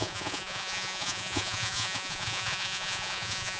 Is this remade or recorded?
remade